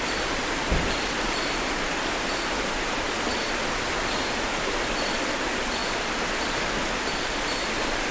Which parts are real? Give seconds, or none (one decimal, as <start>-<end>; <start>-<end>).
0.0-8.1